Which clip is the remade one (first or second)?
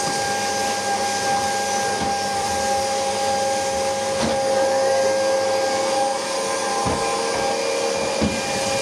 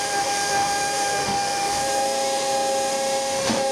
second